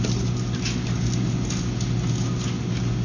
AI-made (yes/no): no